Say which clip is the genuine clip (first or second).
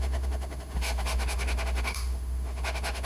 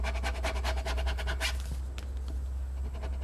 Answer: second